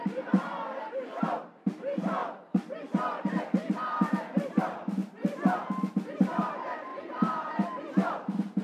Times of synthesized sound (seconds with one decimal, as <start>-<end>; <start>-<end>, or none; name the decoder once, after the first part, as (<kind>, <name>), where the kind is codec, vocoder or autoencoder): 0.0-8.6 (vocoder, BigVGAN v2)